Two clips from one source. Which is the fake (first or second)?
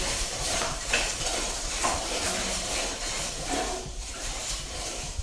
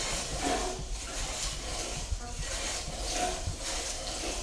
first